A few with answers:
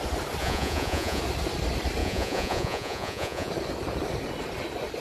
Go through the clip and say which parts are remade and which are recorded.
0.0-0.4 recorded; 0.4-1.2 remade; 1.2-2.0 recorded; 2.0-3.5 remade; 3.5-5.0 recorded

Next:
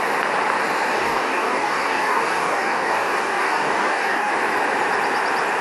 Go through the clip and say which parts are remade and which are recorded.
0.0-0.9 recorded; 0.9-4.3 remade; 4.3-5.6 recorded

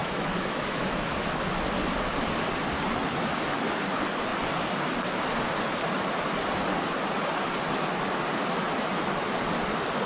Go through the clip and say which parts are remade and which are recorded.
0.0-1.4 remade; 1.4-10.1 recorded

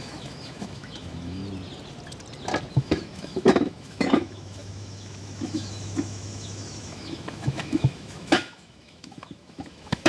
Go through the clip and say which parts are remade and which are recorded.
0.0-1.4 remade; 1.4-2.7 recorded; 2.7-10.1 remade

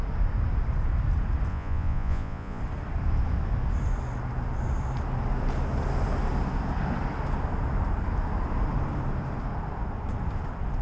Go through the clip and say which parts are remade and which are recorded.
0.0-1.5 recorded; 1.5-2.6 remade; 2.6-10.8 recorded

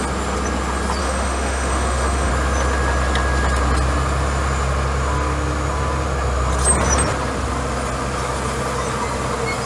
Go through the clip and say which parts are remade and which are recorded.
0.0-1.0 recorded; 1.0-2.3 remade; 2.3-9.7 recorded

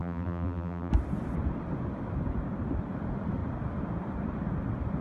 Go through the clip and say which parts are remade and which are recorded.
0.0-0.9 remade; 0.9-5.0 recorded